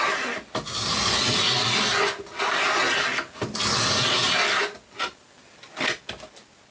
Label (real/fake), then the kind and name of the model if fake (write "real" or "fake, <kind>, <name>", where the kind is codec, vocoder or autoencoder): real